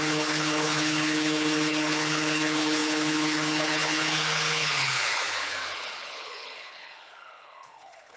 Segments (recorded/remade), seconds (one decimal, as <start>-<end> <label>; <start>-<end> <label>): 0.0-8.2 remade